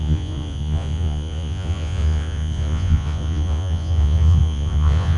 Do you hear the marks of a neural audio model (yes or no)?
yes